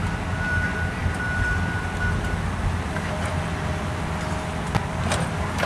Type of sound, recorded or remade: recorded